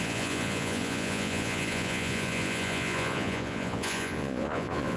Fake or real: fake